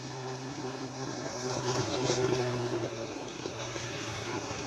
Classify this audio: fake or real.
fake